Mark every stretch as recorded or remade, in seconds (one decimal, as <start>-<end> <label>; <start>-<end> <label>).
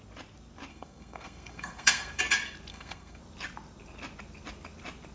0.0-0.7 recorded; 0.7-2.2 remade; 2.2-2.7 recorded; 2.7-3.2 remade; 3.2-5.1 recorded